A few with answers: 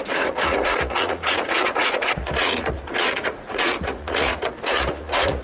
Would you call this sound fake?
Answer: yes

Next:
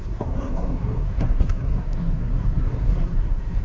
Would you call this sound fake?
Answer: yes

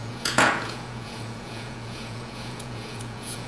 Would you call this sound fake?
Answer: yes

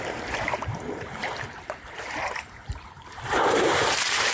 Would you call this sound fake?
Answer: yes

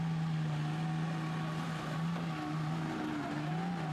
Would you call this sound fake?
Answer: no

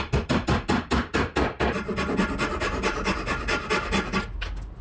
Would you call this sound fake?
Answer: no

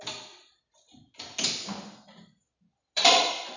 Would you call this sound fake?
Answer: no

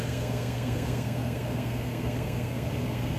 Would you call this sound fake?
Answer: yes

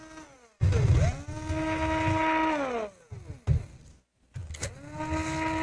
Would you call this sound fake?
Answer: no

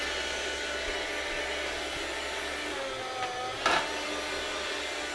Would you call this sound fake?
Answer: no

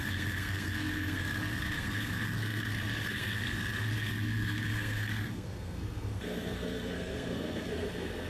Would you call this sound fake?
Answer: yes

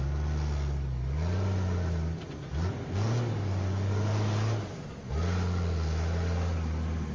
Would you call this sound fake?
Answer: no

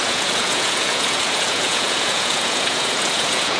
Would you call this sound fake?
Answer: yes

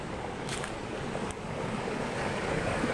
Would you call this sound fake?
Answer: yes